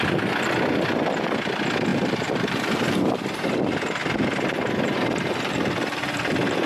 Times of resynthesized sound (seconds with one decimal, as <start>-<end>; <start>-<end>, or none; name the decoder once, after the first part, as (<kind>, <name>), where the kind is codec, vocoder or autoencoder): 1.9-3.6 (vocoder, BigVGAN v2)